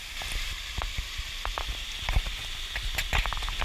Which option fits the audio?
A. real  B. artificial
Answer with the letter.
A